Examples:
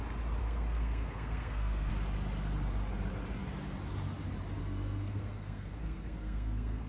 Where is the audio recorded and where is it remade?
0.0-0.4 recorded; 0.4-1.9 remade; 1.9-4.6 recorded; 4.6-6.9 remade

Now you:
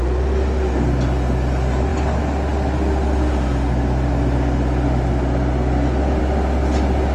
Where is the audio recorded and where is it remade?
0.0-7.1 recorded

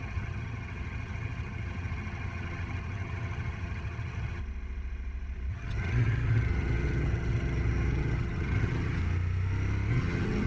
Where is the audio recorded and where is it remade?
0.0-4.4 remade; 4.4-5.5 recorded; 5.5-9.0 remade; 9.0-9.9 recorded; 9.9-10.5 remade